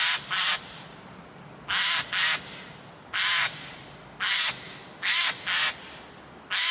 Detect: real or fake real